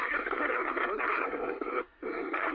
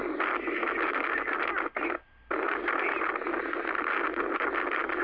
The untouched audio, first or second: second